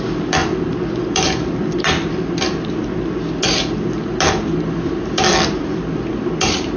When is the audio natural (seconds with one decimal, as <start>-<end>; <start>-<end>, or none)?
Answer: 0.0-6.8